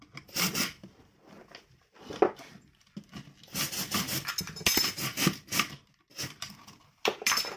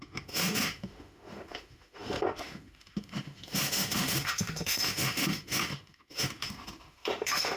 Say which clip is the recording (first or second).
first